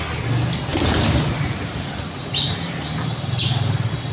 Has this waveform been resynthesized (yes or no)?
no